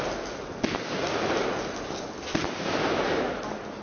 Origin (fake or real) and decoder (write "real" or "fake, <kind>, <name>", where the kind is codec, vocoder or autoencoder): real